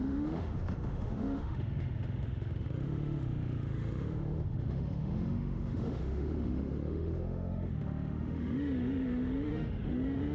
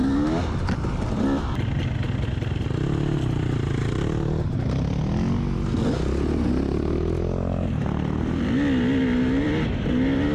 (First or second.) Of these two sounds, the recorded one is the second